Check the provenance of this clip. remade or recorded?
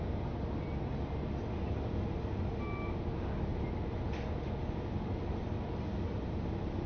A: recorded